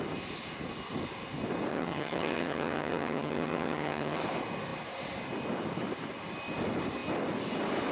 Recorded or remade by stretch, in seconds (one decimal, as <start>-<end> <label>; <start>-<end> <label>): 0.0-1.7 recorded; 1.7-4.2 remade; 4.2-7.9 recorded

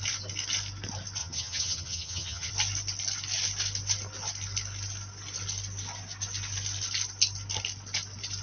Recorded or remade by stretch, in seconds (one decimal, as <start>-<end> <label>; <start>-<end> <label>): 0.0-1.2 recorded; 1.2-2.5 remade; 2.5-8.4 recorded

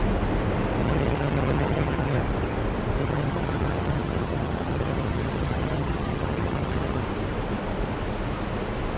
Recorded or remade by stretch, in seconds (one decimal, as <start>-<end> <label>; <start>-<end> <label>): 0.0-0.8 recorded; 0.8-2.2 remade; 2.2-3.0 recorded; 3.0-7.0 remade; 7.0-9.0 recorded